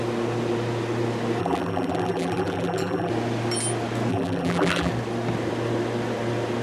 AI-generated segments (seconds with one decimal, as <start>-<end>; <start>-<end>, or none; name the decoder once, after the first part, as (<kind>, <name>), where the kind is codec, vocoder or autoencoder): 1.4-3.1 (vocoder, BigVGAN v2); 4.1-4.9